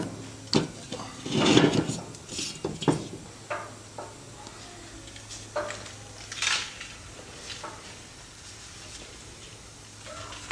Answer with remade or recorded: recorded